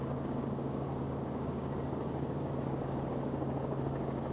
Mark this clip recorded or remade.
remade